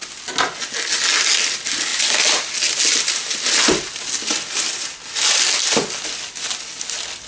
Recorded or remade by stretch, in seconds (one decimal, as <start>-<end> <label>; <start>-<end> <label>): 0.0-7.3 recorded